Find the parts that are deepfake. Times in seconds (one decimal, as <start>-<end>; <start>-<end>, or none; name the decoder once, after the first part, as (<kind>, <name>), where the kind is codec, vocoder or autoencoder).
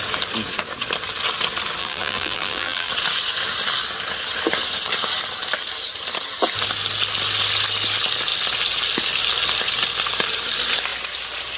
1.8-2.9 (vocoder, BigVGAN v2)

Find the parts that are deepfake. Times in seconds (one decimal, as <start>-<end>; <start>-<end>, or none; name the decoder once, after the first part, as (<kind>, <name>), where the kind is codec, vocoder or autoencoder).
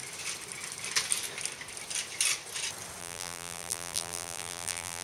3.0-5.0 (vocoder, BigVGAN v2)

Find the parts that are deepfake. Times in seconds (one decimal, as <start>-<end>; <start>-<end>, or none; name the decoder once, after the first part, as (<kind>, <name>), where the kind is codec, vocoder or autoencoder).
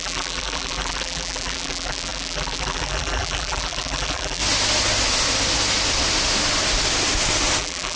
0.0-4.4 (vocoder, BigVGAN v2); 7.6-8.0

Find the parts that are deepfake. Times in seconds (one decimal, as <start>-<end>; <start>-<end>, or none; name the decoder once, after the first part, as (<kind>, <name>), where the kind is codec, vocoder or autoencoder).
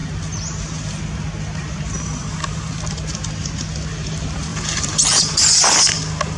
0.0-2.8 (vocoder, BigVGAN v2); 4.5-5.4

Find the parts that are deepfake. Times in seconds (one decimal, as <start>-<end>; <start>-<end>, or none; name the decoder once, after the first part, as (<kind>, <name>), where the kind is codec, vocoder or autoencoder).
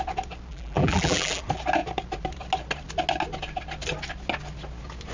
0.5-1.4 (vocoder, BigVGAN v2)